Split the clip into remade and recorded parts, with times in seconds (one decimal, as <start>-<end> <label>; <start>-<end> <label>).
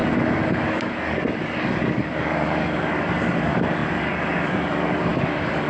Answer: 0.0-5.7 remade